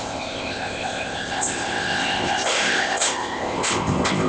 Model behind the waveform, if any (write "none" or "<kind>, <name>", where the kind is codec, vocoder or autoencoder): codec, ZipCodec